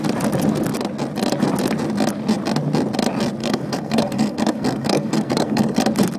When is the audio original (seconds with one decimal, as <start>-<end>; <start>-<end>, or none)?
0.0-3.4; 5.8-6.2

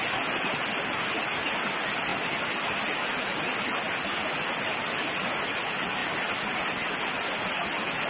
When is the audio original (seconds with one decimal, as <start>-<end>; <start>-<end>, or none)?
0.0-8.1

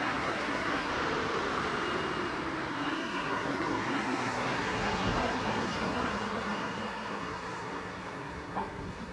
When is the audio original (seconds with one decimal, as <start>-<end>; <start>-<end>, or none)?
0.9-2.7